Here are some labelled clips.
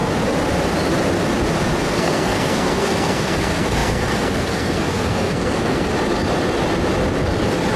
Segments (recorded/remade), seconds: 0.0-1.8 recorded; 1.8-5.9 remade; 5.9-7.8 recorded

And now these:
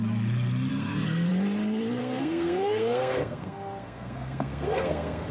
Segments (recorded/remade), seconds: 0.0-0.7 recorded; 0.7-1.3 remade; 1.3-2.0 recorded; 2.0-5.3 remade

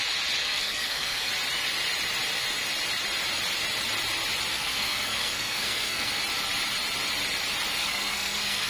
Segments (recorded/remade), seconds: 0.0-0.4 recorded; 0.4-1.3 remade; 1.3-4.5 recorded; 4.5-6.2 remade; 6.2-7.8 recorded; 7.8-8.7 remade